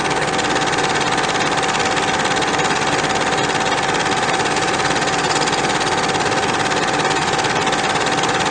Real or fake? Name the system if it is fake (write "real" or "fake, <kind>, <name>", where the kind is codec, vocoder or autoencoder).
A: real